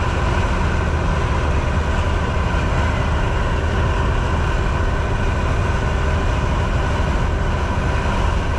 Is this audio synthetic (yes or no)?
no